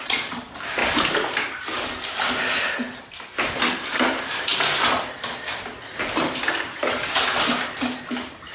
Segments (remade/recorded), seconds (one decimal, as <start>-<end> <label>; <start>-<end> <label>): 0.0-8.5 recorded